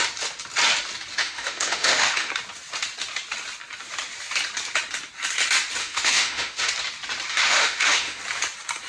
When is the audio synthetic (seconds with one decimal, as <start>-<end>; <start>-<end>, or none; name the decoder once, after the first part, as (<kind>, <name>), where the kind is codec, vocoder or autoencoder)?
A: 1.2-2.3 (autoencoder, DAC-VAE); 5.8-6.7; 7.3-8.2